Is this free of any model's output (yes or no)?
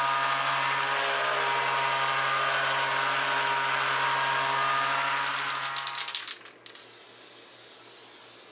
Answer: yes